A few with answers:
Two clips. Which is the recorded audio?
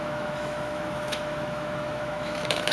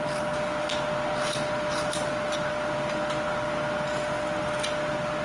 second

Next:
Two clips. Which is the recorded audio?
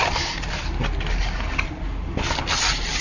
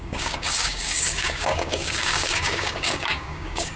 first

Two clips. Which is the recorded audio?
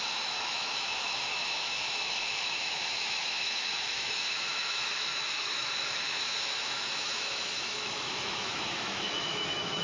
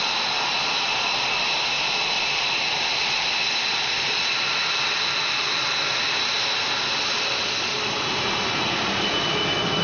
second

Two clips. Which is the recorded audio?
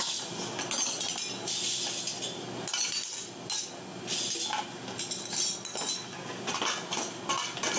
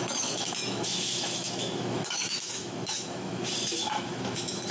first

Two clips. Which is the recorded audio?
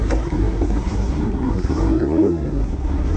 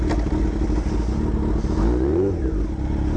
second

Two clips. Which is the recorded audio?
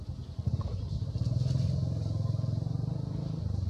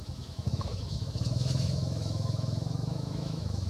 first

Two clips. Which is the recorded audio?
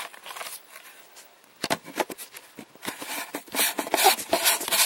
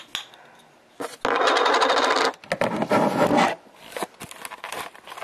second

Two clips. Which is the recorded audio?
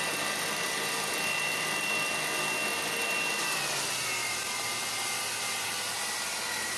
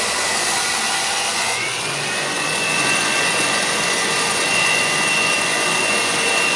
first